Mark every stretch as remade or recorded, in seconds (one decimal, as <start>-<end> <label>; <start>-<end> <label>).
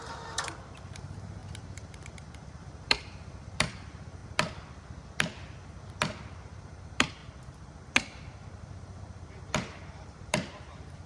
0.0-4.2 remade; 4.2-6.2 recorded; 6.2-7.2 remade; 7.2-8.6 recorded; 8.6-11.1 remade